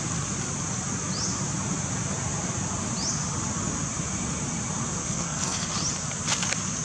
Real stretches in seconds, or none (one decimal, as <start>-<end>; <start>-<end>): 0.0-5.0; 5.7-6.8